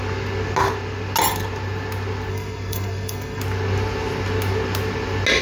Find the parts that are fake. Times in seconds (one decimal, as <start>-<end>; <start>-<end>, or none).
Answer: 2.3-3.4